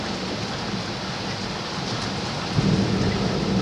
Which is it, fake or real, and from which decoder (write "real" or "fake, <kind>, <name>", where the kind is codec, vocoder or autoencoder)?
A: real